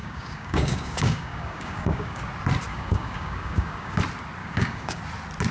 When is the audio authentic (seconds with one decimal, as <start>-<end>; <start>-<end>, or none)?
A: 2.2-2.7; 4.0-4.4; 5.0-5.5